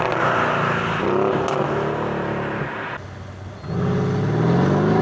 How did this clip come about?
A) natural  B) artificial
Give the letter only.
A